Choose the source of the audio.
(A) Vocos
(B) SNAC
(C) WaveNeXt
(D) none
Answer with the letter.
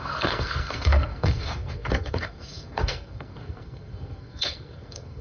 B